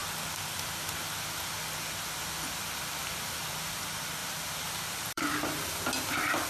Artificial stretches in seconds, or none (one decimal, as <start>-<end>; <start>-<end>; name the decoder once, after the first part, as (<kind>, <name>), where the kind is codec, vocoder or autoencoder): 4.2-5.6 (vocoder, BigVGAN v2)